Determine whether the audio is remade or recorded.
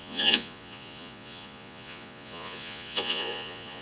remade